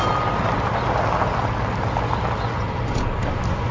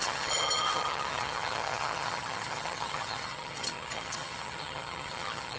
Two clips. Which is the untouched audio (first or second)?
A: first